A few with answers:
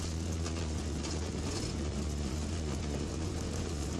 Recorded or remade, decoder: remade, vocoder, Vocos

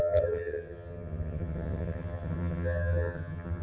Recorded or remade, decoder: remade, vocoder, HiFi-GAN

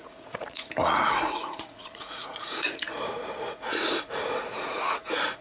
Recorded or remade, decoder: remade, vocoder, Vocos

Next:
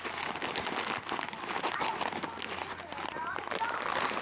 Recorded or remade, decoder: recorded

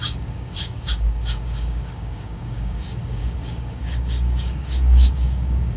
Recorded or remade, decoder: remade, codec, DAC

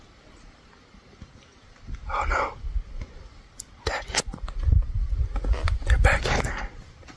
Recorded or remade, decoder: recorded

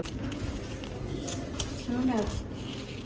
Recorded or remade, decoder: recorded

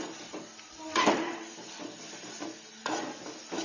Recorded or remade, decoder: remade, vocoder, BigVGAN v2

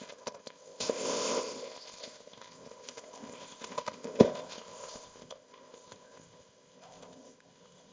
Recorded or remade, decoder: remade, codec, ZipCodec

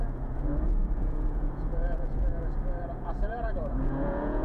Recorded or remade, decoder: remade, vocoder, Vocos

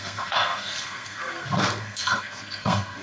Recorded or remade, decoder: remade, codec, SNAC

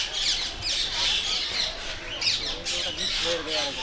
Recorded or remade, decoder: recorded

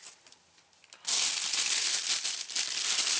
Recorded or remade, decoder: recorded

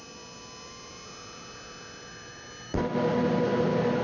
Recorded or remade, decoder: recorded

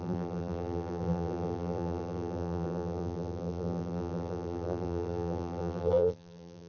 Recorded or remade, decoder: remade, vocoder, BigVGAN v2